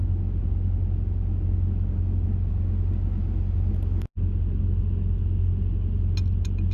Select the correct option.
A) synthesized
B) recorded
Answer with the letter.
B